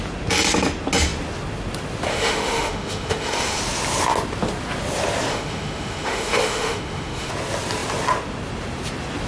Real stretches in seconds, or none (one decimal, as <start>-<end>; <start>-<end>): 0.0-2.1; 3.6-5.3; 7.3-9.3